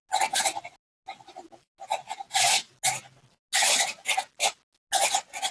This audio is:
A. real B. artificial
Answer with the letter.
A